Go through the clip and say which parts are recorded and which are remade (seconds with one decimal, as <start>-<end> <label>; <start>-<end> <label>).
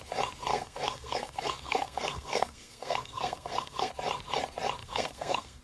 0.0-0.5 recorded; 0.5-3.9 remade; 3.9-4.8 recorded; 4.8-5.6 remade